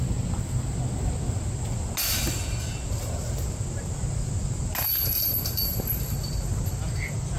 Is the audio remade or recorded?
recorded